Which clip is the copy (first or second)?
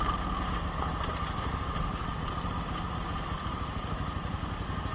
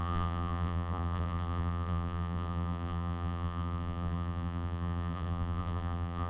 second